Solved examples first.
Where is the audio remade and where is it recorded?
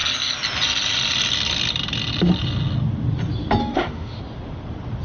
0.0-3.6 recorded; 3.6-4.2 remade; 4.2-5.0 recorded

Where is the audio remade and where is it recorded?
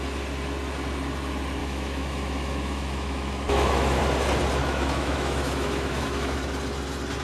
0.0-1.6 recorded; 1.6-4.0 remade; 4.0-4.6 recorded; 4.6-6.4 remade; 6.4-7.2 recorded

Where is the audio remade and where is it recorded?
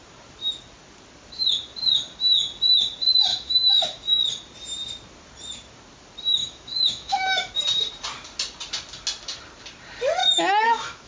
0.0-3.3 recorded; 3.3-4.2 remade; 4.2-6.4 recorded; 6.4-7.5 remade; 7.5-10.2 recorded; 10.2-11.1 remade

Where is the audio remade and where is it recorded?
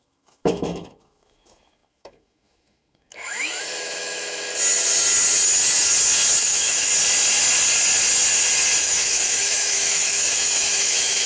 0.0-4.5 remade; 4.5-6.4 recorded; 6.4-6.9 remade; 6.9-8.8 recorded; 8.8-11.3 remade